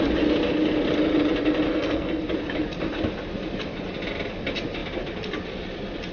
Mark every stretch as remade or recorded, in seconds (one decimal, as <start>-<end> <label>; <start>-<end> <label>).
0.0-1.7 recorded; 1.7-2.2 remade; 2.2-6.1 recorded